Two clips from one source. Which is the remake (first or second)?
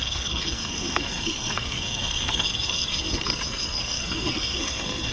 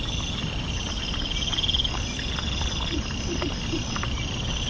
first